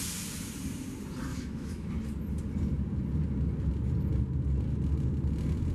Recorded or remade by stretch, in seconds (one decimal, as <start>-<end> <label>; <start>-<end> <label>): 0.0-1.3 recorded; 1.3-1.9 remade; 1.9-5.7 recorded